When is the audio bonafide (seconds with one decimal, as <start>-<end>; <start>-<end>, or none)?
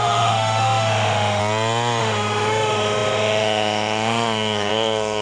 1.4-2.0